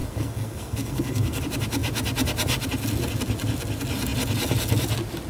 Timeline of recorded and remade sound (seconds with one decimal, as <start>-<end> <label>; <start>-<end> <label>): 0.0-1.4 remade; 1.4-5.3 recorded